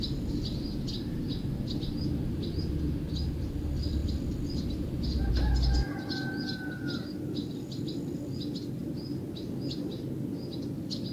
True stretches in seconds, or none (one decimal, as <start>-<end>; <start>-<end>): 0.0-11.1